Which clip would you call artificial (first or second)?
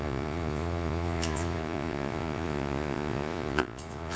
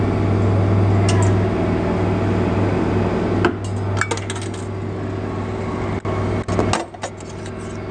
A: first